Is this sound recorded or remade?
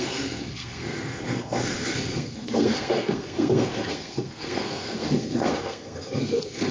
remade